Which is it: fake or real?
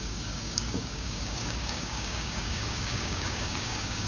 fake